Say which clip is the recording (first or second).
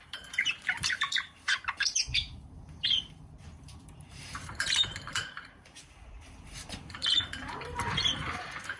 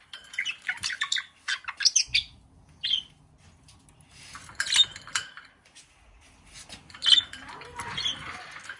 second